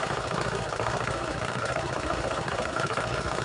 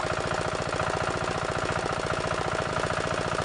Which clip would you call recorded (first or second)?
second